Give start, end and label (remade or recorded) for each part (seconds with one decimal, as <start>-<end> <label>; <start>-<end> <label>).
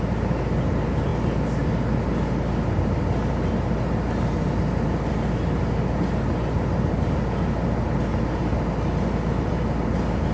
0.0-10.3 recorded